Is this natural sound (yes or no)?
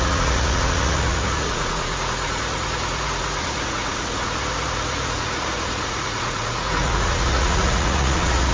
no